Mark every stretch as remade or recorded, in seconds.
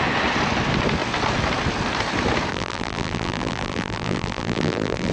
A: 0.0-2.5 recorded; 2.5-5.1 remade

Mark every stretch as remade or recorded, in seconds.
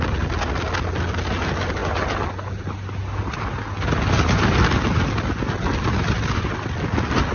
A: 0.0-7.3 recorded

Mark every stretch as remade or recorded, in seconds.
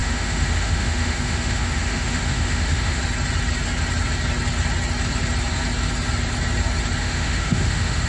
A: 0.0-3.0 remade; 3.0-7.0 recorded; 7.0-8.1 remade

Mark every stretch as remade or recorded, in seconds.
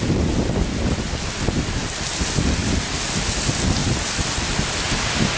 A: 0.0-5.4 recorded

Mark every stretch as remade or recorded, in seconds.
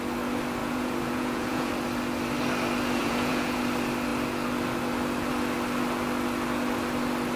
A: 0.0-0.6 recorded; 0.6-1.7 remade; 1.7-3.0 recorded; 3.0-3.6 remade; 3.6-7.4 recorded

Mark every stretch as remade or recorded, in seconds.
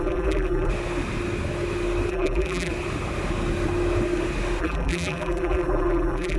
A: 0.0-0.7 remade; 0.7-2.1 recorded; 2.1-2.7 remade; 2.7-4.6 recorded; 4.6-6.4 remade